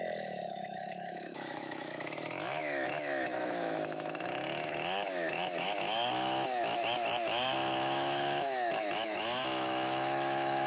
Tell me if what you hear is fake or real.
fake